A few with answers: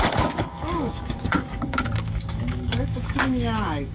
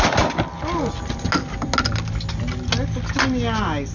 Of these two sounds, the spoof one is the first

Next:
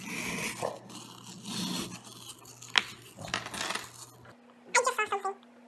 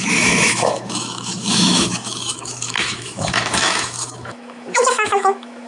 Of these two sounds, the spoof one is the second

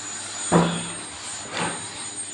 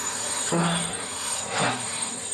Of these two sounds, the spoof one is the second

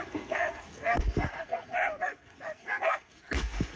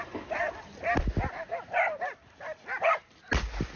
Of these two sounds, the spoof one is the first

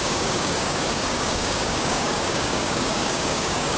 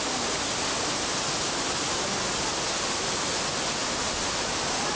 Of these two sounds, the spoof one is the first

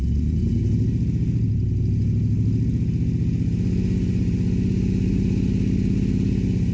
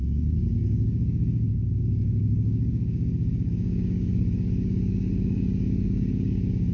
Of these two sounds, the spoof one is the second